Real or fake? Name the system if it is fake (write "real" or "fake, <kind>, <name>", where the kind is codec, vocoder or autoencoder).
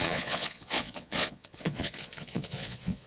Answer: fake, vocoder, Vocos